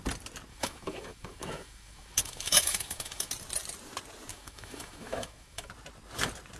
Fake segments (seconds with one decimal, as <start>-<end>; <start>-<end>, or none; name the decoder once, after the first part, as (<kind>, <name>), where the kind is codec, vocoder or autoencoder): 0.5-3.3 (autoencoder, DAC-VAE); 4.3-5.7